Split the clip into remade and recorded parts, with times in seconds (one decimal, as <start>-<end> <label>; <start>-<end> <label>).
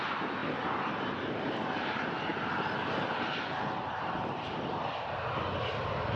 0.0-6.2 recorded